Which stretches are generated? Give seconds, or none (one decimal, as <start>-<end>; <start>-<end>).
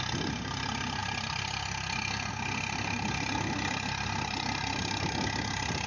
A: none